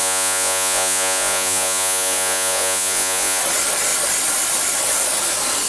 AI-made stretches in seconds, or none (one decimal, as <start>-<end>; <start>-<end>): 0.0-3.4